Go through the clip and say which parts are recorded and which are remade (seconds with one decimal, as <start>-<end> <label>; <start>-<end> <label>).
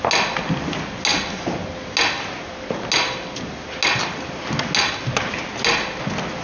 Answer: 0.0-6.4 recorded